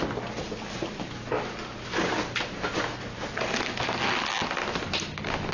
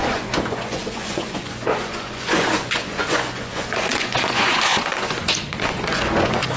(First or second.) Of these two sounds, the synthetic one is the second